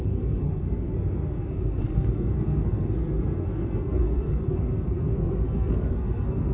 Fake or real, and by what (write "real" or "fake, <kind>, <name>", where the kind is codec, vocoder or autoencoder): fake, codec, SNAC